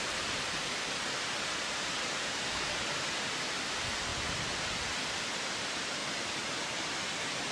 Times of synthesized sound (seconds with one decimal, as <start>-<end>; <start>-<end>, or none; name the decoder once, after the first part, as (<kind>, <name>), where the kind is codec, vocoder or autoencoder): 6.0-6.6 (vocoder, BigVGAN v2)

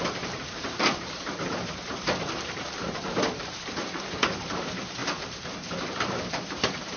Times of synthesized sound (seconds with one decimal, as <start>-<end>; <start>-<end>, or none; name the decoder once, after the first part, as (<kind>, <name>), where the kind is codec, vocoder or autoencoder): 0.0-5.0 (vocoder, BigVGAN v2); 6.3-7.0

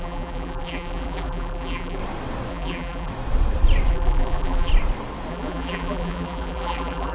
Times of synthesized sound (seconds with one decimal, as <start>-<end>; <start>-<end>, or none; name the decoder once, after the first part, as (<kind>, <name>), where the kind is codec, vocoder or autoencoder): 0.0-2.0 (vocoder, BigVGAN v2); 2.5-3.1; 3.9-4.7; 5.3-7.1